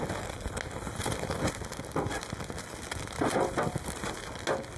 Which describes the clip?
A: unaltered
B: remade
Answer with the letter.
A